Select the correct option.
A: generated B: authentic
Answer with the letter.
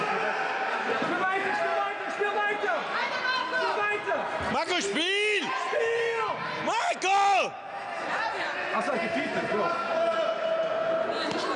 B